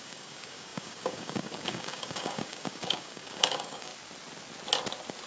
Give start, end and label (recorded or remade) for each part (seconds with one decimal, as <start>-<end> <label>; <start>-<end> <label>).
0.0-3.9 remade; 3.9-5.3 recorded